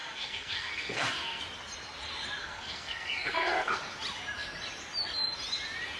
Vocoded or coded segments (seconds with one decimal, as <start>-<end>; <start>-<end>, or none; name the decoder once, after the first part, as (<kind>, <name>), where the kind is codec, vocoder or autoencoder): 0.0-1.4 (codec, SNAC); 2.4-3.8

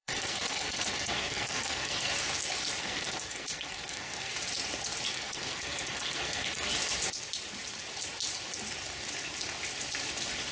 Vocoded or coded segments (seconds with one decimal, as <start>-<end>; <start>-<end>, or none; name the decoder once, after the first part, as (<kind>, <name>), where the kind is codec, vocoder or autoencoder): 0.0-2.1 (codec, SNAC); 2.8-4.3; 5.1-6.7

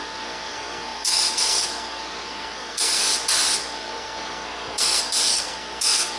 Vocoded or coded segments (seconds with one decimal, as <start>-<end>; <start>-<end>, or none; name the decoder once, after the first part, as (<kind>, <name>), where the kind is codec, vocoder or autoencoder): 0.0-3.0 (codec, SNAC); 3.6-6.2

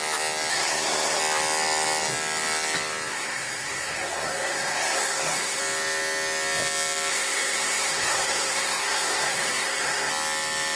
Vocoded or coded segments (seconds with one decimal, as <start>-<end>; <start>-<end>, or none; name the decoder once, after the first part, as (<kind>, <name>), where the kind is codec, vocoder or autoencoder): 0.5-1.2 (codec, SNAC); 3.1-5.6; 7.1-10.1

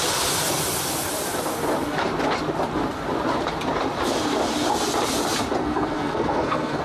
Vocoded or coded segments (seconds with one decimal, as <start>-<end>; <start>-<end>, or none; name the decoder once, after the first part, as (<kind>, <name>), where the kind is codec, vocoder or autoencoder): 5.6-6.8 (codec, SNAC)

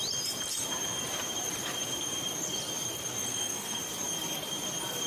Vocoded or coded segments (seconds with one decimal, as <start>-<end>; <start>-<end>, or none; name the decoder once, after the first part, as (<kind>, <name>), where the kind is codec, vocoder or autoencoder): 3.3-3.8 (codec, SNAC)

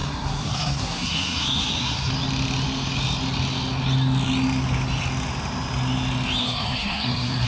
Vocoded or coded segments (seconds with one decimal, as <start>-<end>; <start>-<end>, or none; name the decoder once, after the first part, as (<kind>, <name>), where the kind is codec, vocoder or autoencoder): 0.0-2.1 (codec, SNAC); 6.4-7.5